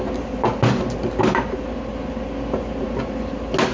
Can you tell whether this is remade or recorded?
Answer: recorded